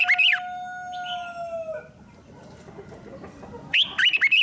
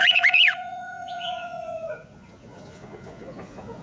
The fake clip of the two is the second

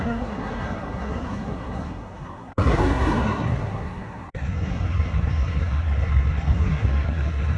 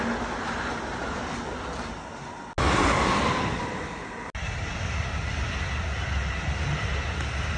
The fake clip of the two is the first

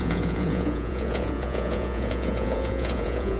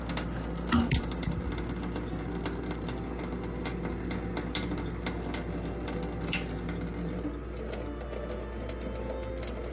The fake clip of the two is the first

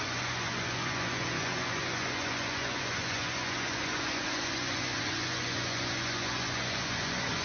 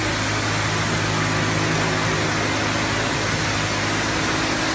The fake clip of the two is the first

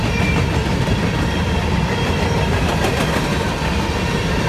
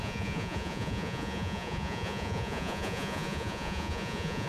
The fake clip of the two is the second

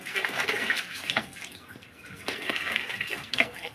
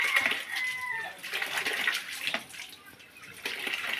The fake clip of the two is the first